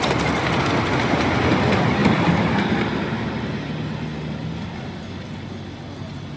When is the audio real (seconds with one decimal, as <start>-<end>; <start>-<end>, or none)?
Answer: 0.0-6.4